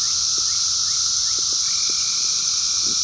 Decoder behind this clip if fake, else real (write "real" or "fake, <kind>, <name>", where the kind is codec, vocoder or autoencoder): real